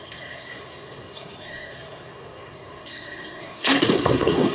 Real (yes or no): no